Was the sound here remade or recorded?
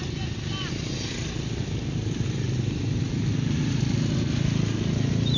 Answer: recorded